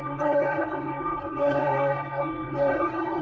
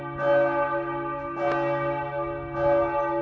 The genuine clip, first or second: second